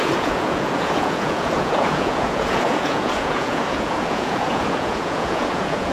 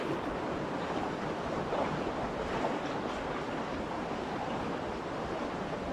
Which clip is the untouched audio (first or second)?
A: second